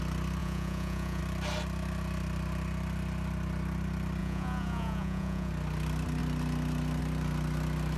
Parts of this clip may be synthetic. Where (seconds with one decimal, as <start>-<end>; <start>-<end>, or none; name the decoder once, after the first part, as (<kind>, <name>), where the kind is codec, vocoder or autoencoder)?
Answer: 0.4-1.2 (vocoder, Vocos); 4.2-5.5

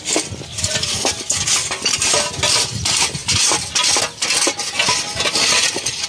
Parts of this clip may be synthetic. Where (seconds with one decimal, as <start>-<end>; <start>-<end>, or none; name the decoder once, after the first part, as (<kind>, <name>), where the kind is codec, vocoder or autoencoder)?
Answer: none

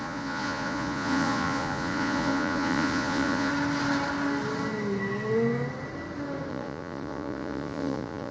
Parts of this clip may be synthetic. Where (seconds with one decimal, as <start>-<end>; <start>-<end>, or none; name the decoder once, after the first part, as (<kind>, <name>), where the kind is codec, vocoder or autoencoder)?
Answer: 0.0-3.5 (vocoder, Vocos); 6.5-8.3

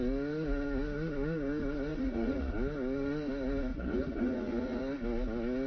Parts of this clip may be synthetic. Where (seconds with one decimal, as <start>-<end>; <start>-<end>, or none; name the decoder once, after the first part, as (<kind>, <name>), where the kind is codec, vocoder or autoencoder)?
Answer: 1.9-2.5 (vocoder, Vocos); 3.7-4.8